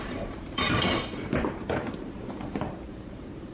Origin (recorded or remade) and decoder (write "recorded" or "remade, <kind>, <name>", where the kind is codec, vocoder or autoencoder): remade, vocoder, BigVGAN v2